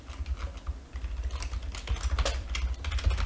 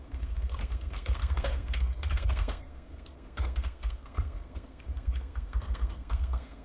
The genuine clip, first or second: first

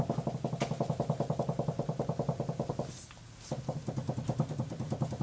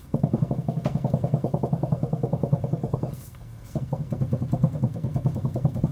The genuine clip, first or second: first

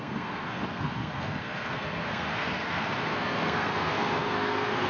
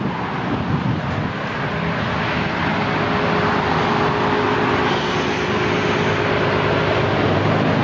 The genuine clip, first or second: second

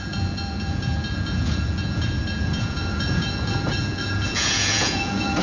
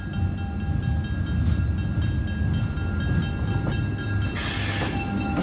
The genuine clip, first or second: second